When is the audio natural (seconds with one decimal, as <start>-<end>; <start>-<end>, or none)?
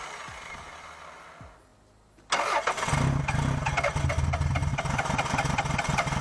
0.0-6.2